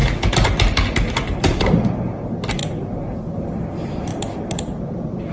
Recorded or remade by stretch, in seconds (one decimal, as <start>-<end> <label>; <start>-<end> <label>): 0.0-5.3 recorded